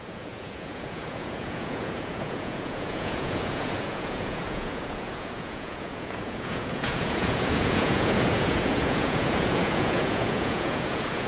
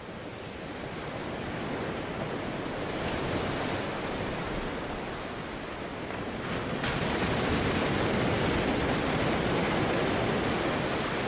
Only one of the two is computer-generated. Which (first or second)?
first